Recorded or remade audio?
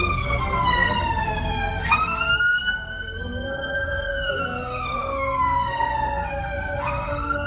remade